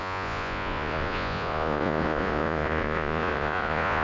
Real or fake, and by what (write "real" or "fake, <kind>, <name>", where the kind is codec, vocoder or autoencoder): fake, vocoder, Vocos